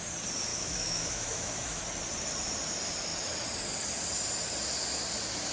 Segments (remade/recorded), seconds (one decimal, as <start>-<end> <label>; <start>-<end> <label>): 0.0-0.5 recorded; 0.5-1.8 remade; 1.8-5.5 recorded